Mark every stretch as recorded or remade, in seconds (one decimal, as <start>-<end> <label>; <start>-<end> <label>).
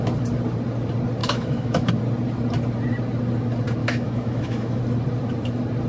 0.0-1.2 recorded; 1.2-1.9 remade; 1.9-3.8 recorded; 3.8-4.8 remade; 4.8-5.9 recorded